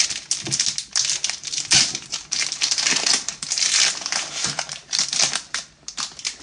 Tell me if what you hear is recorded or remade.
recorded